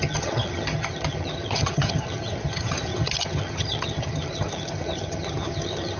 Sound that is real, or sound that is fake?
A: fake